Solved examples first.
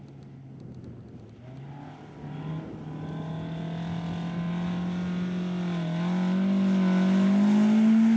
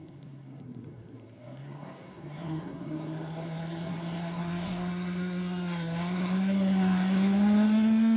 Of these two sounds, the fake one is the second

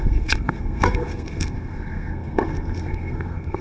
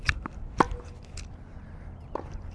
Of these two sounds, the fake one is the first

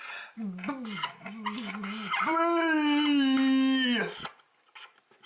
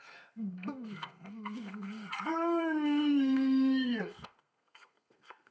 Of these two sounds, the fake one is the second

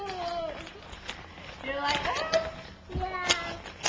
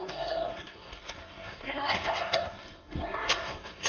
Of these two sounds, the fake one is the second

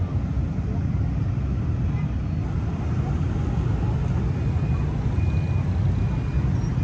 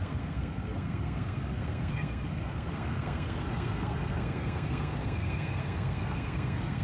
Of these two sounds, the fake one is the second